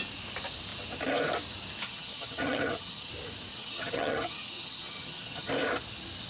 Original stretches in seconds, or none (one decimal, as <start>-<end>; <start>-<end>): 0.0-1.8; 3.1-3.5; 5.5-6.3